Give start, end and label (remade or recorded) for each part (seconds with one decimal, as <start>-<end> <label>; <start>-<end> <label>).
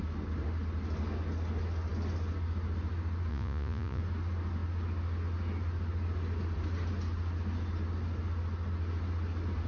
0.0-3.3 recorded; 3.3-4.0 remade; 4.0-9.7 recorded